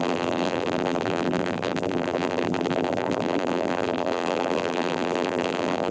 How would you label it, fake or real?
fake